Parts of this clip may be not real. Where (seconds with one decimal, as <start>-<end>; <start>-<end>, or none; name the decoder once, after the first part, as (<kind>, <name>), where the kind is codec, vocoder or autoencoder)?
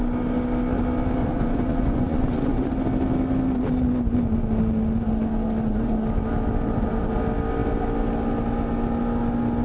1.2-2.7 (vocoder, Vocos)